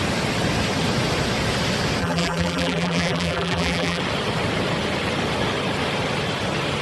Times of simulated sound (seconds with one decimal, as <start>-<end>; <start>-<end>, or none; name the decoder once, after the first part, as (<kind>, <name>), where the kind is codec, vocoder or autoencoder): 2.0-4.0 (vocoder, BigVGAN v2)

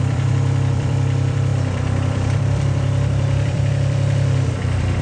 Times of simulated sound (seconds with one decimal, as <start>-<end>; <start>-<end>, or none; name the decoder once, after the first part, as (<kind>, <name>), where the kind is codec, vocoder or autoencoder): 0.0-5.0 (vocoder, BigVGAN v2)

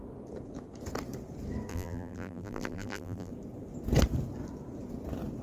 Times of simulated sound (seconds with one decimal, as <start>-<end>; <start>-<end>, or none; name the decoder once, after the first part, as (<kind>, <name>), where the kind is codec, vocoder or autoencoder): 1.7-3.3 (vocoder, BigVGAN v2)

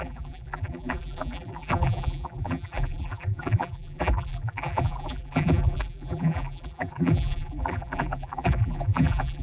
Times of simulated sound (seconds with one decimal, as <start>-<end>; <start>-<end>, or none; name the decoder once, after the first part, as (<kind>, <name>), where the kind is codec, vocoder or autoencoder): 0.0-9.4 (vocoder, BigVGAN v2)